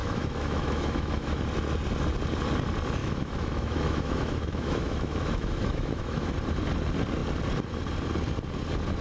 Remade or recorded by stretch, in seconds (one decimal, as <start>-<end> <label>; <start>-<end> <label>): 0.0-1.4 remade; 1.4-3.0 recorded; 3.0-6.3 remade; 6.3-9.0 recorded